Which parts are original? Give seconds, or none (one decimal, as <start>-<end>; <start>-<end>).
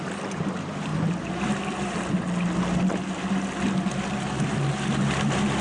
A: 0.0-5.6